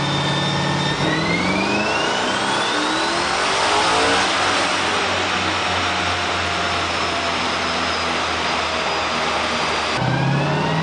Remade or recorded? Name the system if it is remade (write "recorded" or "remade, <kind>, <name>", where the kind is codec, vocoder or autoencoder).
recorded